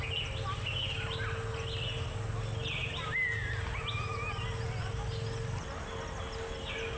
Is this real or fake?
real